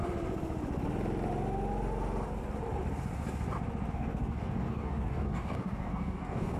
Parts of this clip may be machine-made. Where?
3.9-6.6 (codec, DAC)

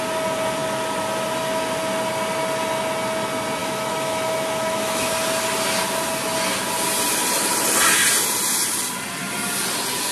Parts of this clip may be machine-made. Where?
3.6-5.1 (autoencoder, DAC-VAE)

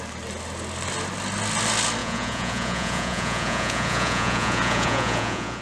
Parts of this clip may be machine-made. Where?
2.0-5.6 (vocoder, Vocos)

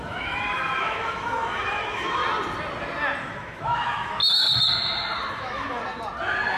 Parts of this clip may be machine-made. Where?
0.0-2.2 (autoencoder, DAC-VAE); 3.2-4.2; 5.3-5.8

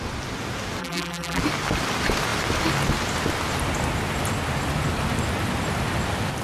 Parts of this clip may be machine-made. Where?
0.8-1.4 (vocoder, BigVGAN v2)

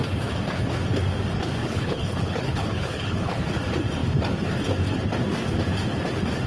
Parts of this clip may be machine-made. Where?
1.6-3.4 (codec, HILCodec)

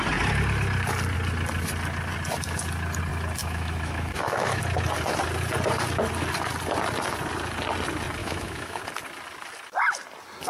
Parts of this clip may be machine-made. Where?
3.4-4.6 (autoencoder, DAC-VAE); 8.2-8.8

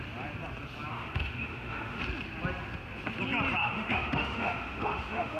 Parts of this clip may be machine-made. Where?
0.9-2.0 (autoencoder, DAC-VAE); 3.6-5.4